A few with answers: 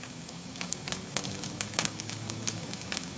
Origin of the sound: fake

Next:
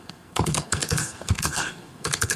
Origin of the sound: fake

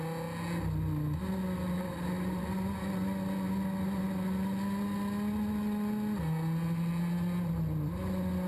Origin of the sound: real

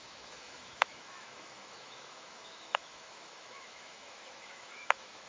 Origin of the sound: fake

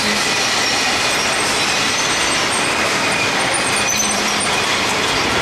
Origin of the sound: real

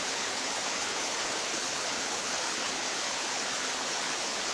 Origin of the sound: fake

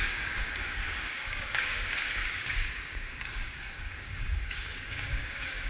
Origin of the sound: fake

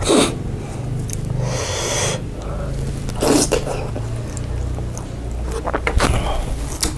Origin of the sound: real